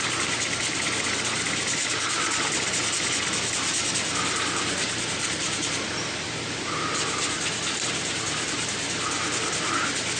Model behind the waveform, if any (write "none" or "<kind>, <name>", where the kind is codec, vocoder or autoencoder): none